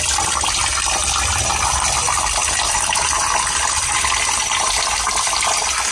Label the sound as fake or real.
real